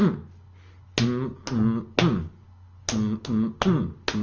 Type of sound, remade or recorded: recorded